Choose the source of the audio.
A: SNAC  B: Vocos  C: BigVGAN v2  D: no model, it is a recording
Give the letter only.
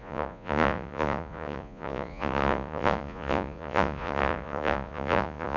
B